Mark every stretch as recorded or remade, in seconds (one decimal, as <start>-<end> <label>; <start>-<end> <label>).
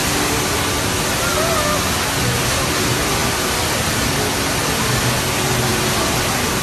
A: 0.0-6.6 recorded